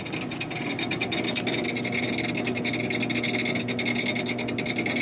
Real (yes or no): yes